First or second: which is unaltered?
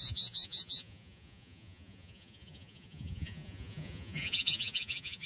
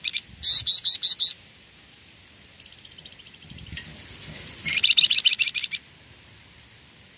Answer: second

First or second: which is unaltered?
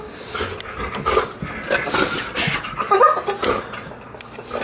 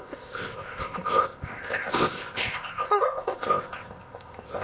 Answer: first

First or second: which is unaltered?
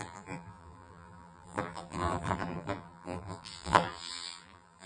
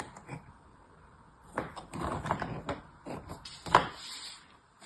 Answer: second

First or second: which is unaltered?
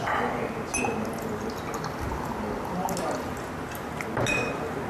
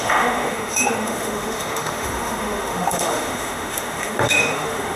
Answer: first